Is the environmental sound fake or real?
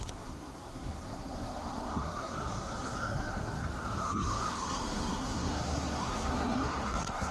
fake